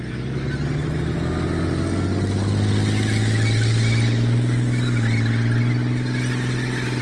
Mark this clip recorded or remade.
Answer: recorded